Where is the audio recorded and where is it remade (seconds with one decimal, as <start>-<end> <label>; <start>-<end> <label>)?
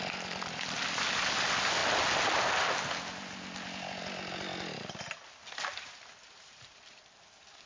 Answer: 0.0-1.8 remade; 1.8-6.4 recorded; 6.4-7.7 remade